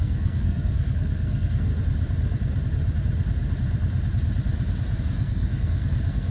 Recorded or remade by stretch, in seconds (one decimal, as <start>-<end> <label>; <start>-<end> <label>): 0.0-1.7 remade; 1.7-5.0 recorded; 5.0-6.3 remade